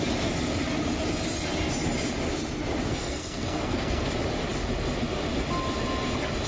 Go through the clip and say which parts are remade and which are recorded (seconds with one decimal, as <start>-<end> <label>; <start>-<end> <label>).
0.0-2.9 recorded; 2.9-4.1 remade; 4.1-6.5 recorded